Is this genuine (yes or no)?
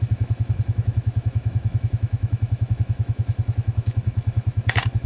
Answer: no